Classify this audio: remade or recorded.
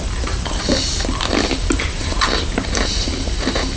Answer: remade